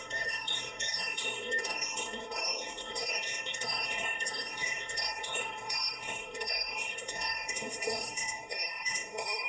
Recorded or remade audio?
remade